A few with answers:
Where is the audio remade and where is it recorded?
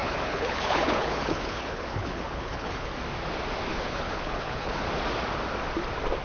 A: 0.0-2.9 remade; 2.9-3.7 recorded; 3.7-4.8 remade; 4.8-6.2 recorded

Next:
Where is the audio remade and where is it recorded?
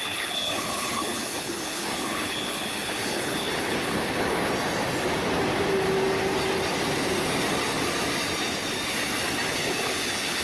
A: 0.0-4.4 remade; 4.4-9.5 recorded; 9.5-10.4 remade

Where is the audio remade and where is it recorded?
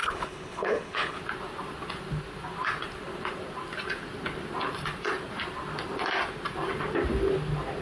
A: 0.0-1.2 remade; 1.2-7.8 recorded